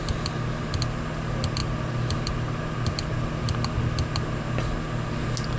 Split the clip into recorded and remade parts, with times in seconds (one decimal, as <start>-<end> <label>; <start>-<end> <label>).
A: 0.0-5.6 recorded